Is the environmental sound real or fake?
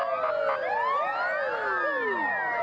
real